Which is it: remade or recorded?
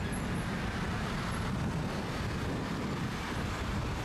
recorded